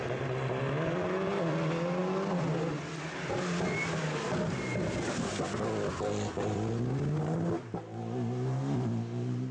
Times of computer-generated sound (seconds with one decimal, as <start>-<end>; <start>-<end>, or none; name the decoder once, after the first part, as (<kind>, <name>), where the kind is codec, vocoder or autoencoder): none